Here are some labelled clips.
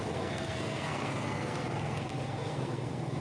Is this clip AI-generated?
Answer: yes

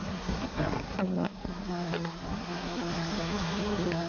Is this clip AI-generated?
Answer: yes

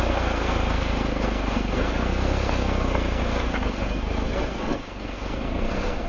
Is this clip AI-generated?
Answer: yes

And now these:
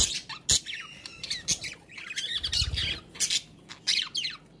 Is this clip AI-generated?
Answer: no